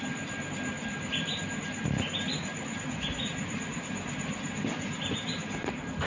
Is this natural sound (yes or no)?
yes